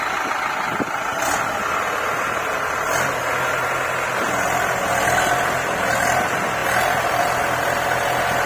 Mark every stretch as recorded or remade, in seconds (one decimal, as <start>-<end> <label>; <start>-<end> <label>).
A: 0.0-8.5 recorded